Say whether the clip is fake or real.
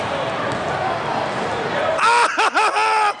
real